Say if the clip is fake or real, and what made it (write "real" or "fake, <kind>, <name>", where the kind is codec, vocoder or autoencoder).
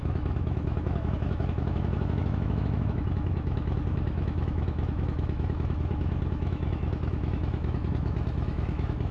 fake, autoencoder, DAC-VAE